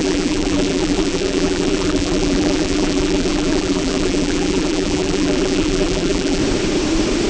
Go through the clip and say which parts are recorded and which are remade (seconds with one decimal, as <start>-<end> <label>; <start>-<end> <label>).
0.0-6.4 remade; 6.4-7.3 recorded